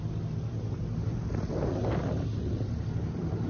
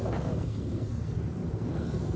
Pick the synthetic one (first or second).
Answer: second